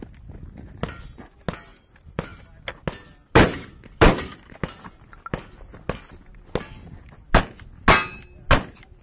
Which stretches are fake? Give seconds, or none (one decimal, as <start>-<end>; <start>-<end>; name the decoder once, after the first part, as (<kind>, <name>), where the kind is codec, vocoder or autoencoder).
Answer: 1.7-2.4 (vocoder, BigVGAN v2)